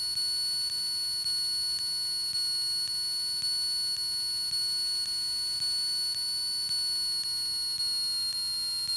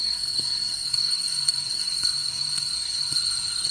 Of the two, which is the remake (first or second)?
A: second